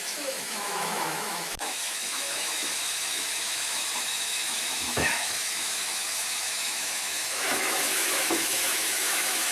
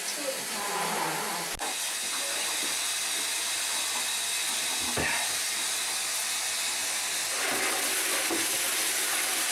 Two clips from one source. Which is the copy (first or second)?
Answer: first